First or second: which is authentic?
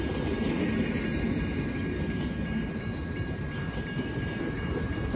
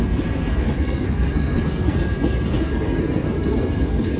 first